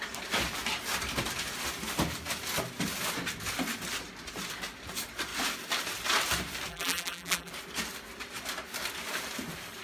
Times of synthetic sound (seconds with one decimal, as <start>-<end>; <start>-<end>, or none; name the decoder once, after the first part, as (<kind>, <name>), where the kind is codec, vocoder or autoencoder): 6.7-7.5 (vocoder, BigVGAN v2)